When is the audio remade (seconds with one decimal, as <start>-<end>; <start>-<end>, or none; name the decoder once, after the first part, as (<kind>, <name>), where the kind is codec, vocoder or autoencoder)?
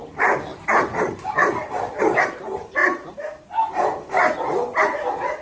none